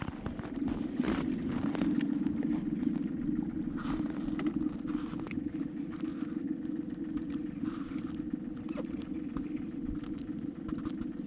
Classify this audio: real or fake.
real